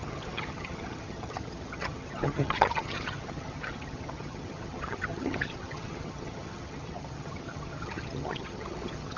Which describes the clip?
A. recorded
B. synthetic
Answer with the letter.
B